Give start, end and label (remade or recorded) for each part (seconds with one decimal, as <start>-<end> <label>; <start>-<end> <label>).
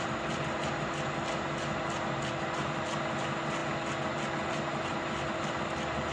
0.0-6.1 recorded